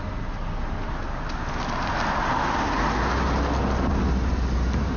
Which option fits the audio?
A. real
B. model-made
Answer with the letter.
A